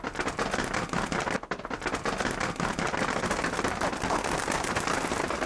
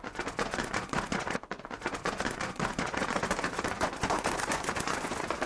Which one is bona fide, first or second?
first